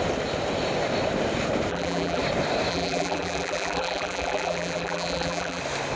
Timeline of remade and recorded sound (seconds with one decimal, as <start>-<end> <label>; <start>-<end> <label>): 0.0-1.7 recorded; 1.7-2.2 remade; 2.2-2.7 recorded; 2.7-5.6 remade; 5.6-6.0 recorded